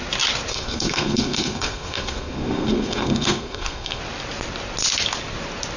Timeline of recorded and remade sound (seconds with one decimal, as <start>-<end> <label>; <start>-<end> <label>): 0.0-0.5 recorded; 0.5-4.0 remade; 4.0-5.8 recorded